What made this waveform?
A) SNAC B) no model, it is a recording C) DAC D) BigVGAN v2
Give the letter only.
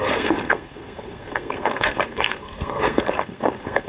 A